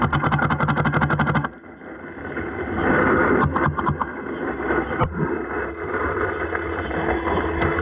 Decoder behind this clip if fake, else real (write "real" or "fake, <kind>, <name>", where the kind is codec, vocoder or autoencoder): real